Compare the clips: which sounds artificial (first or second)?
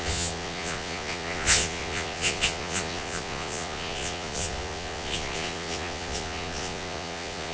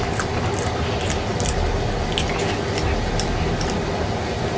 first